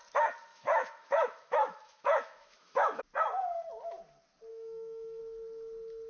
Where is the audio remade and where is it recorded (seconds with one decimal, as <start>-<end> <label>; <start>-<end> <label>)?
0.0-0.5 recorded; 0.5-3.0 remade; 3.0-4.5 recorded; 4.5-5.2 remade; 5.2-6.1 recorded